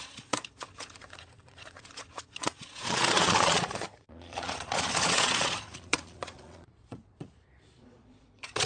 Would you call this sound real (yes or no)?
no